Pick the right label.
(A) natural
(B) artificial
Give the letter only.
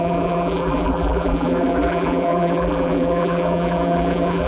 B